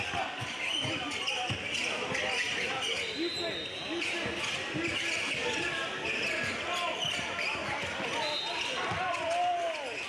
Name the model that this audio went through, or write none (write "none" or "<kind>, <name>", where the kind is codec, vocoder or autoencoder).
none